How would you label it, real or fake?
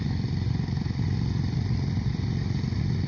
real